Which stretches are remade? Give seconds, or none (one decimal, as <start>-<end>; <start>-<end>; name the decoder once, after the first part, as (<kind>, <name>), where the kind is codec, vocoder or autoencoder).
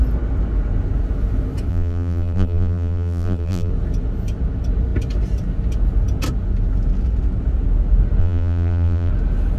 1.7-3.7 (vocoder, BigVGAN v2); 8.2-9.1